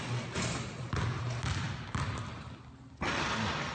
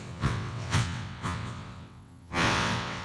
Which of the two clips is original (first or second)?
first